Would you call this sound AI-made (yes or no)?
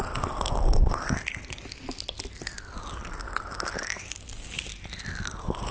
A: no